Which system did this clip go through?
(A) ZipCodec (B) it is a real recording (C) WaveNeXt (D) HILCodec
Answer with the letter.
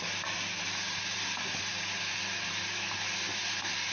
B